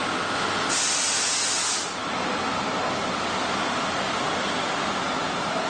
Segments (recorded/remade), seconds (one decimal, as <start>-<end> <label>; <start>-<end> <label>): 0.0-5.7 recorded

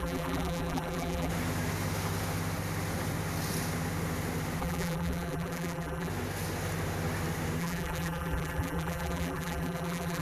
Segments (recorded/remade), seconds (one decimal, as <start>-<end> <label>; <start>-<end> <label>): 0.0-1.3 remade; 1.3-4.6 recorded; 4.6-6.1 remade; 6.1-7.6 recorded; 7.6-10.2 remade

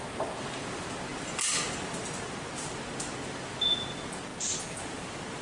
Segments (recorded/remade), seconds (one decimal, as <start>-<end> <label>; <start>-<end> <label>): 0.0-5.4 recorded

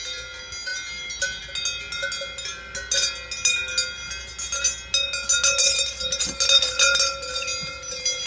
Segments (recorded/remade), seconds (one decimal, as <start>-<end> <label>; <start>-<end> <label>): 0.0-8.3 recorded

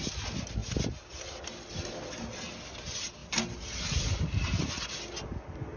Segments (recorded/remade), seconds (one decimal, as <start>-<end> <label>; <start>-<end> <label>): 0.0-3.2 recorded; 3.2-4.6 remade; 4.6-5.8 recorded

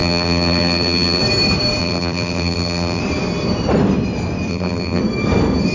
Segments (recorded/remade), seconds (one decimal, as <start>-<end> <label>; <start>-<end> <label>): 0.0-1.2 remade; 1.2-1.8 recorded; 1.8-3.0 remade; 3.0-4.5 recorded; 4.5-5.0 remade; 5.0-5.7 recorded